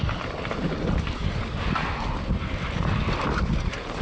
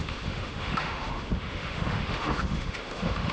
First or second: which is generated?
second